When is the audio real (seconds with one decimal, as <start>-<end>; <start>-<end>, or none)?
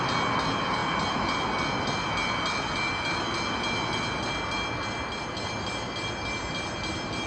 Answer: 0.0-7.3